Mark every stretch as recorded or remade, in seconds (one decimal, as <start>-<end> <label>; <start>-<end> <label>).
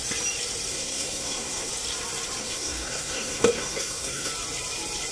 0.0-0.7 recorded; 0.7-1.7 remade; 1.7-2.4 recorded; 2.4-4.3 remade; 4.3-5.1 recorded